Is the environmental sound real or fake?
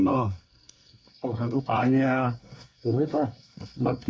fake